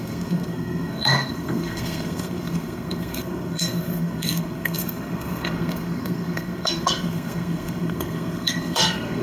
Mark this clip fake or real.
fake